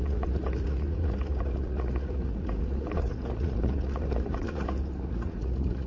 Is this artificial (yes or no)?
yes